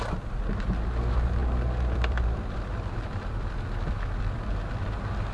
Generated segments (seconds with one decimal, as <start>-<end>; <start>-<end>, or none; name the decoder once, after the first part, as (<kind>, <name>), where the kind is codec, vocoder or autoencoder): 1.4-4.6 (vocoder, BigVGAN v2)